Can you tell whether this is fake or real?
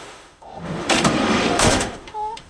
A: fake